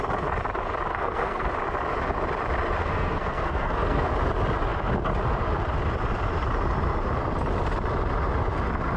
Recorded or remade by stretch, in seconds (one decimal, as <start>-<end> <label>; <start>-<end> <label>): 0.0-0.9 recorded; 0.9-1.5 remade; 1.5-2.8 recorded; 2.8-4.1 remade; 4.1-9.0 recorded

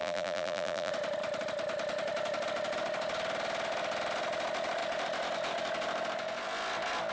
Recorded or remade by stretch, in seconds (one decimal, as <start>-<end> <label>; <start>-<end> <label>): 0.0-0.9 remade; 0.9-7.1 recorded

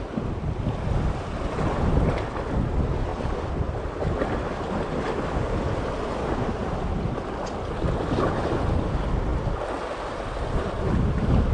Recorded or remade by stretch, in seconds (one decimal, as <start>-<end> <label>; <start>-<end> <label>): 0.0-11.5 recorded

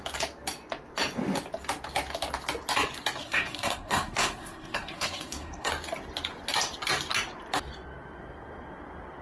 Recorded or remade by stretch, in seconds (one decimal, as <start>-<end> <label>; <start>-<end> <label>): 0.0-3.2 recorded; 3.2-5.7 remade; 5.7-9.2 recorded

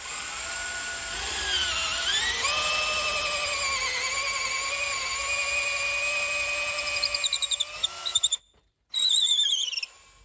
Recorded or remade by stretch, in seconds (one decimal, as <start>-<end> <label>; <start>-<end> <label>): 0.0-10.2 recorded

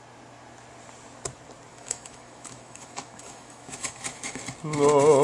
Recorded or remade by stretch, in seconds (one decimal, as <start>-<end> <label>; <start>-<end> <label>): 0.0-1.7 recorded; 1.7-4.4 remade; 4.4-5.2 recorded

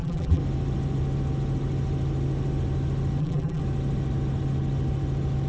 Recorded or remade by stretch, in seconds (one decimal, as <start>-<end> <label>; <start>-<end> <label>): 0.0-0.4 remade; 0.4-3.2 recorded; 3.2-3.6 remade; 3.6-5.5 recorded